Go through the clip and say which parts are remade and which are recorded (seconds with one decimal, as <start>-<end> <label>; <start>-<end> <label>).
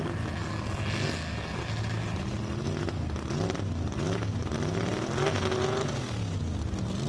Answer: 0.0-7.1 recorded